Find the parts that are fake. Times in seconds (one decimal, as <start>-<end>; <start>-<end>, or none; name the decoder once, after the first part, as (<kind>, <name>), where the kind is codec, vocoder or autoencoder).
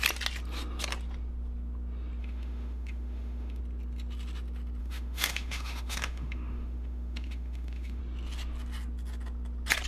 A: 2.2-3.6 (autoencoder, DAC-VAE); 4.8-8.0